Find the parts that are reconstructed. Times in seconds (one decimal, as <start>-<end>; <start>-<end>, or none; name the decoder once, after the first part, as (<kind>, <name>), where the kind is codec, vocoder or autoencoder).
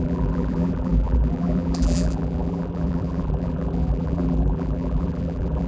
0.0-5.7 (vocoder, BigVGAN v2)